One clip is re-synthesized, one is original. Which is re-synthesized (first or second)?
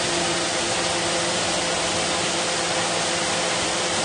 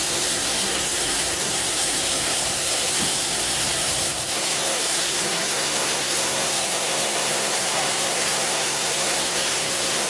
second